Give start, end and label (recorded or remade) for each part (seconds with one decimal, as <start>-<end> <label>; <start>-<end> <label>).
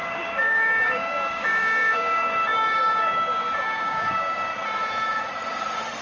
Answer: 0.0-4.5 remade; 4.5-6.0 recorded